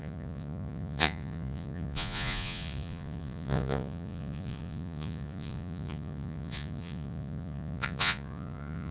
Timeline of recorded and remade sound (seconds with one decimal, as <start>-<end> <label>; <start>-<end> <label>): 0.0-8.9 remade